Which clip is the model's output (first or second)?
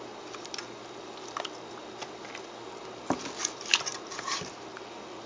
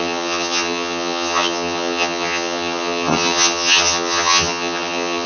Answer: second